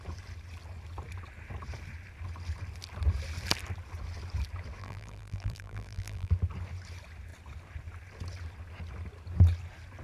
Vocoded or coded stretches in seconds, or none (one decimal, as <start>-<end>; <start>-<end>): 4.8-6.3